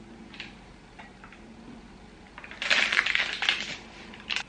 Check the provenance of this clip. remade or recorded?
recorded